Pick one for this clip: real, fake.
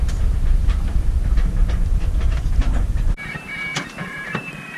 fake